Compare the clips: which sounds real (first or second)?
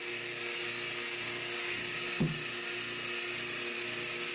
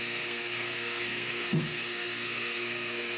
first